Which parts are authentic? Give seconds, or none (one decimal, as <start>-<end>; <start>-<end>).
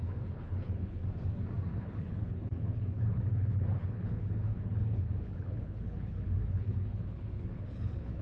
1.0-1.7